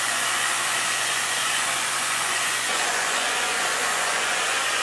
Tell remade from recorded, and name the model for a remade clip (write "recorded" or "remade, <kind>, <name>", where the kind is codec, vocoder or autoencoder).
remade, vocoder, Vocos